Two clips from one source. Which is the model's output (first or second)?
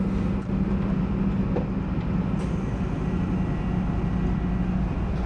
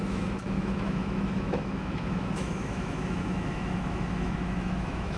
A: second